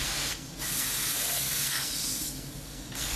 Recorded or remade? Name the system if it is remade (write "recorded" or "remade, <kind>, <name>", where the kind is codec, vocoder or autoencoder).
remade, codec, SNAC